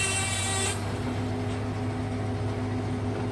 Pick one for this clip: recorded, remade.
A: recorded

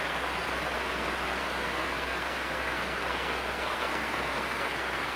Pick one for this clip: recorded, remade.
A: remade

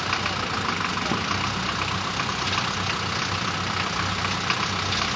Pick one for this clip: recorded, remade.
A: recorded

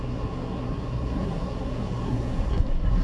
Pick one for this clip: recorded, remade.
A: remade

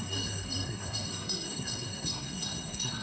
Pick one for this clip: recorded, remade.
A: remade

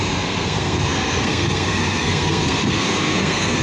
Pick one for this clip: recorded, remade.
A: remade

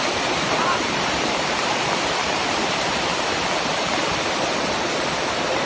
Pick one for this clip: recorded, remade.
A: recorded